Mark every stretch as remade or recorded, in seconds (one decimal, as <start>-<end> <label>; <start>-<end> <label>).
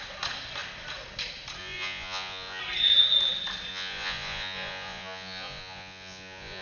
0.0-1.6 recorded; 1.6-2.6 remade; 2.6-3.7 recorded; 3.7-6.6 remade